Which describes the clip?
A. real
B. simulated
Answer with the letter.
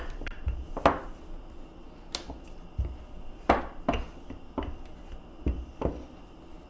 A